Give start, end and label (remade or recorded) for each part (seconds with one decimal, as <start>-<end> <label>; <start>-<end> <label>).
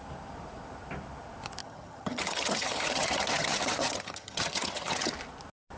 0.0-1.6 recorded; 1.6-5.1 remade; 5.1-5.8 recorded